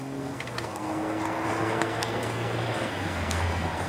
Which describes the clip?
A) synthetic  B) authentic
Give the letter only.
A